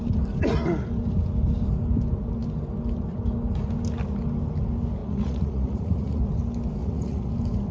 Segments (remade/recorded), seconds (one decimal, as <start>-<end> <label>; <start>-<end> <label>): 0.0-5.0 recorded; 5.0-6.2 remade; 6.2-6.8 recorded; 6.8-7.3 remade; 7.3-7.7 recorded